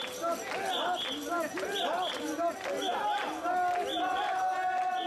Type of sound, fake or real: real